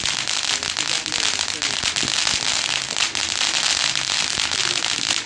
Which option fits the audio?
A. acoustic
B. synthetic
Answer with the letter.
A